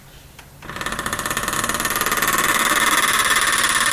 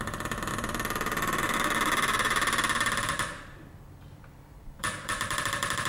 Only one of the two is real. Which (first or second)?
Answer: first